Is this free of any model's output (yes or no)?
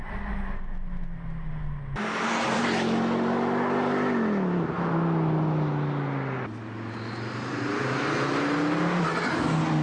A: yes